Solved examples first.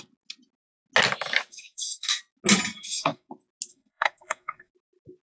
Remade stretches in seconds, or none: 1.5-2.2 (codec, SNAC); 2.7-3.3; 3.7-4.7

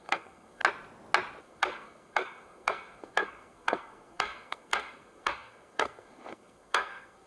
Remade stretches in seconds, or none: 0.0-0.6 (codec, SNAC); 1.4-7.3

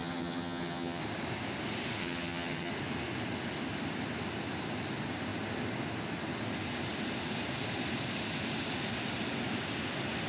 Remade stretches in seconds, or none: 0.0-1.0 (vocoder, HiFi-GAN); 2.0-2.7

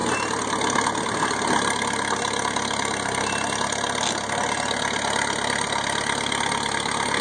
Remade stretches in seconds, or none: none

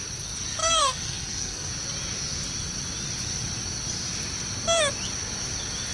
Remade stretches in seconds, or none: 0.6-1.7 (codec, SNAC)

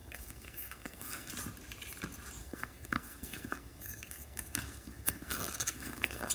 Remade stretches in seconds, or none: 0.0-1.3 (codec, SNAC); 2.4-6.3

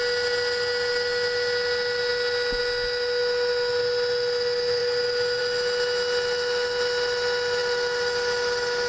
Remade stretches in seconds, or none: none